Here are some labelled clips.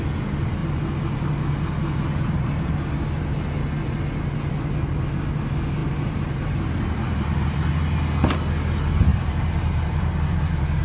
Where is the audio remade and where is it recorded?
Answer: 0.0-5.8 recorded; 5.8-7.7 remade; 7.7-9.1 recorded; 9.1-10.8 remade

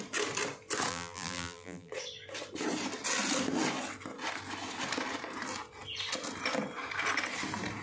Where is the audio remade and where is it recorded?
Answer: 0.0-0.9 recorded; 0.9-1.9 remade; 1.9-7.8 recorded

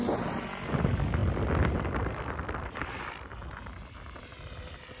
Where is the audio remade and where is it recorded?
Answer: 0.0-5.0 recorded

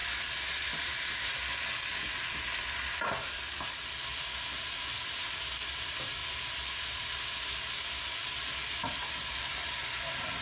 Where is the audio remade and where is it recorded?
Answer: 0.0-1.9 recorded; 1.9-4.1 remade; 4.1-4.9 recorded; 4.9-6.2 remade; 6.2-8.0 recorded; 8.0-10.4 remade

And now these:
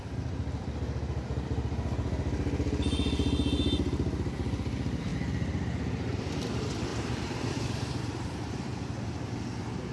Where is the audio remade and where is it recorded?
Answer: 0.0-6.9 recorded; 6.9-8.7 remade; 8.7-9.9 recorded

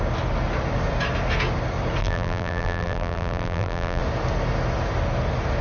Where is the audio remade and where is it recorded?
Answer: 0.0-2.0 recorded; 2.0-4.0 remade; 4.0-5.6 recorded

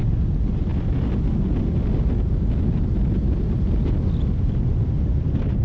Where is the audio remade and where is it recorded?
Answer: 0.0-5.6 recorded

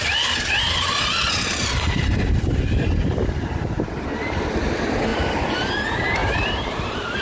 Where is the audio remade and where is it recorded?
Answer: 0.0-5.1 recorded; 5.1-5.7 remade; 5.7-6.2 recorded; 6.2-7.2 remade